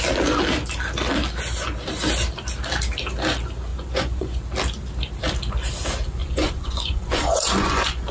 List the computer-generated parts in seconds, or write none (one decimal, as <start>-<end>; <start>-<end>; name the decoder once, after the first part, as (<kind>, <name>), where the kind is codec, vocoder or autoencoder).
3.7-4.4 (vocoder, Vocos); 6.2-8.1